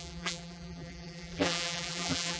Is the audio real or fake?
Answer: fake